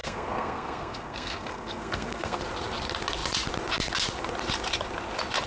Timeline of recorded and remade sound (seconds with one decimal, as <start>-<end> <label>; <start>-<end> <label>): 0.0-2.4 remade; 2.4-5.5 recorded